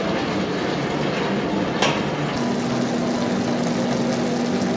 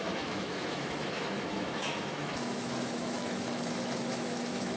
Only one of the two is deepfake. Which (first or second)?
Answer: second